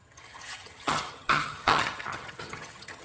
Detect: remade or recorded remade